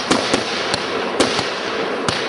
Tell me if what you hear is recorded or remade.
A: recorded